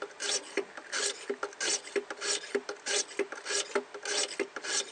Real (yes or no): yes